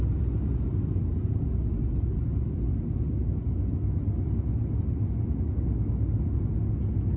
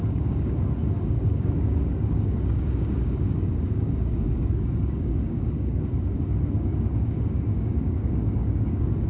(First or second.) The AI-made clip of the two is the second